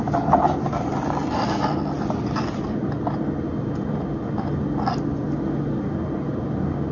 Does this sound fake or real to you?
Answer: real